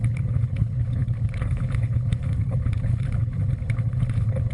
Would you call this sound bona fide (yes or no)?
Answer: no